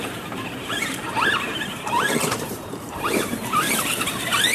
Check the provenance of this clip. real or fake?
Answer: fake